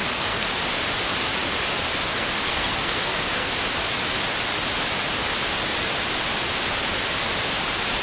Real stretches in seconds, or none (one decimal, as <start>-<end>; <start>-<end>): 0.5-2.1; 3.5-8.0